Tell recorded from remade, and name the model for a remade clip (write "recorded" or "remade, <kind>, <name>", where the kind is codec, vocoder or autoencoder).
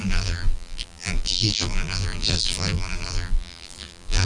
remade, vocoder, BigVGAN v2